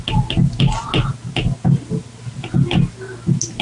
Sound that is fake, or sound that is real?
real